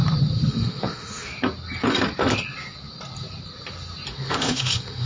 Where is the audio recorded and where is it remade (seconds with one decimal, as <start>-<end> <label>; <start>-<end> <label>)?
0.0-0.5 recorded; 0.5-1.3 remade; 1.3-4.1 recorded; 4.1-5.1 remade